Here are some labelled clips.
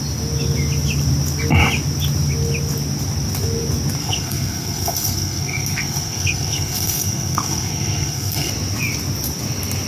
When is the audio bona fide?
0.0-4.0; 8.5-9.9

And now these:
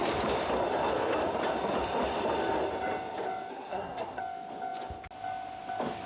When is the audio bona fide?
0.0-3.5; 4.2-6.1

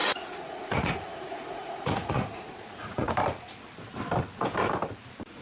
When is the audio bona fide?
3.1-5.4

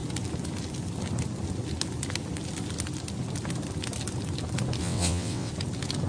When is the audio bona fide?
0.0-4.8; 5.5-6.1

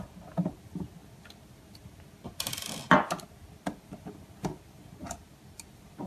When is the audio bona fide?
0.0-6.1

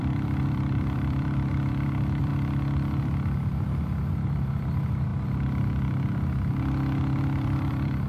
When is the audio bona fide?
2.3-4.1; 5.1-7.2

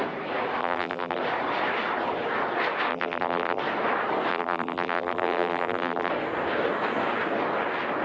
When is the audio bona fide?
0.0-0.6; 1.2-2.9; 3.6-4.3; 6.1-8.0

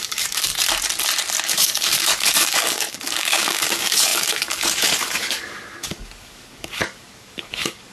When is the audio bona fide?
0.5-1.4